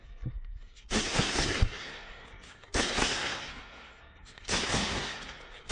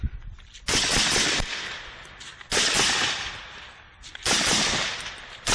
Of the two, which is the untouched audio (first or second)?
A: second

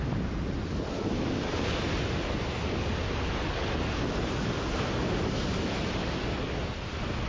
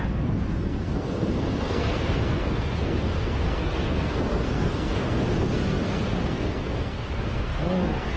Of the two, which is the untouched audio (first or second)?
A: first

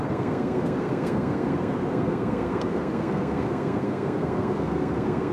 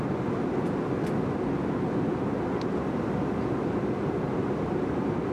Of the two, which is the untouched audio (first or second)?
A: second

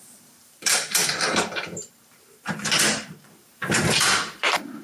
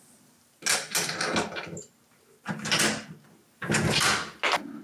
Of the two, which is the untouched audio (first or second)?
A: second